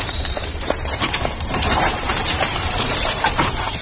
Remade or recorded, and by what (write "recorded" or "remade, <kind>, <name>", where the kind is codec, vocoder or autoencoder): remade, vocoder, BigVGAN v2